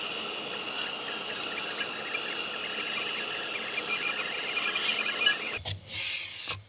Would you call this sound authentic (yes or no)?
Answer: yes